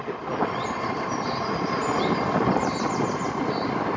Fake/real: real